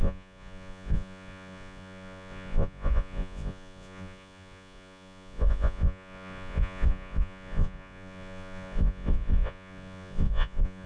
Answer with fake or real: fake